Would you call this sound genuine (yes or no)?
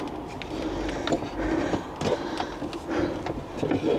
yes